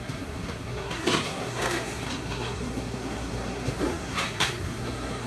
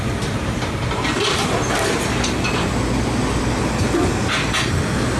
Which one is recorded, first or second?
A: second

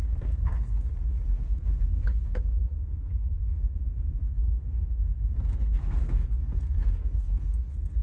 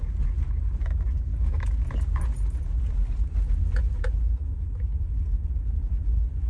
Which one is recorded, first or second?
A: second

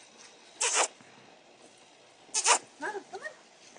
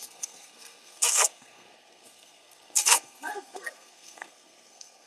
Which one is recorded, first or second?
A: first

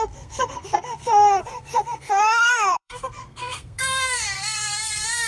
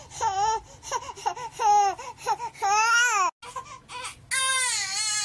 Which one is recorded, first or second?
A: second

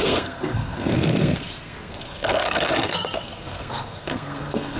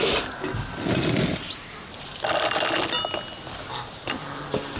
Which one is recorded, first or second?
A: second